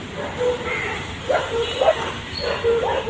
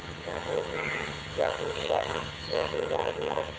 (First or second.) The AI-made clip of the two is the second